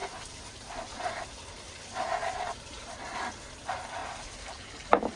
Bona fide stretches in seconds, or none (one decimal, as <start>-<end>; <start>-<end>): 1.0-2.1; 3.0-4.0